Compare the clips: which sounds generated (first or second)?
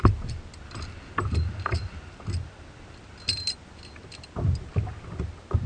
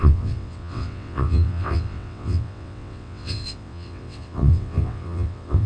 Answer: second